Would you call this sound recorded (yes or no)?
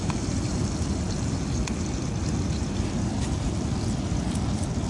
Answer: yes